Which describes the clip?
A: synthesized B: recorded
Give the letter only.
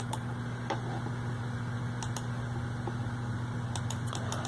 B